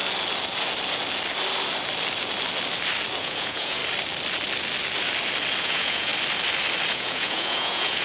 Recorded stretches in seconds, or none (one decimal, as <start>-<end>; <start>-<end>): 0.0-3.2; 3.8-5.6; 6.1-6.9

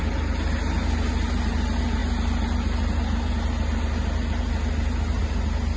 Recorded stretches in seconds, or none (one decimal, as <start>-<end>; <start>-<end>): 0.0-5.8

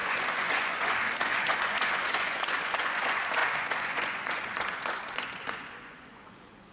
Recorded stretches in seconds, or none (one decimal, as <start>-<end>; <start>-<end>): none

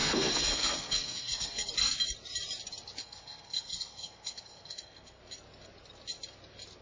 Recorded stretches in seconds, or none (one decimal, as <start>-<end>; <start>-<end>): 1.7-3.0; 5.2-6.8

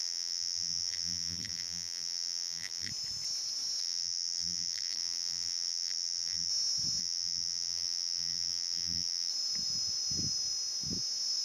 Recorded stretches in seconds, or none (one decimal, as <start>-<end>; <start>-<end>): 2.9-3.8; 6.5-7.0; 9.3-11.4

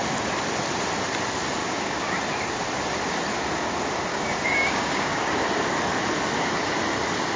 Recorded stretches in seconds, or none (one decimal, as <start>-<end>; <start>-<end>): 0.0-1.6; 2.2-4.1; 5.4-7.4